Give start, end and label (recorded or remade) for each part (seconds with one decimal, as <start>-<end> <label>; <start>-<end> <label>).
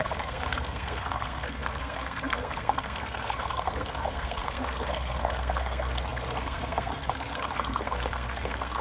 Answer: 0.0-8.8 remade